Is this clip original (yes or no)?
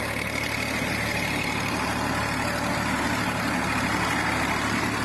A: yes